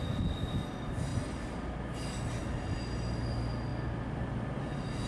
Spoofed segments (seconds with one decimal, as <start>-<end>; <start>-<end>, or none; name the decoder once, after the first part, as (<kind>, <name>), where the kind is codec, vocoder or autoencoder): none